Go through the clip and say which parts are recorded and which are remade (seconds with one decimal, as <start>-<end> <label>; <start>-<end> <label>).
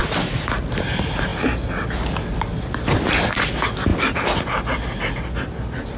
0.0-6.0 recorded